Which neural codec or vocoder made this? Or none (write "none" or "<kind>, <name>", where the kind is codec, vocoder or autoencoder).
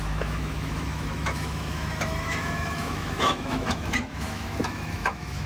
autoencoder, DAC-VAE